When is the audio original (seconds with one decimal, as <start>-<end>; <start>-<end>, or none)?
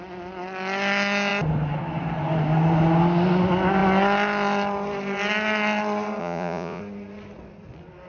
0.0-6.2; 6.8-8.1